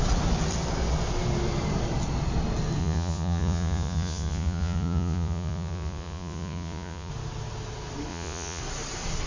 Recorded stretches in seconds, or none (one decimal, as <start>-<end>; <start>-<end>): 0.0-2.8; 7.1-8.1; 8.6-9.3